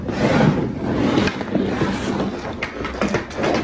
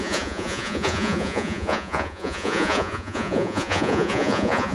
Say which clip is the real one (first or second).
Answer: first